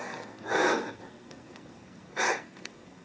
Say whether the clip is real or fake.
fake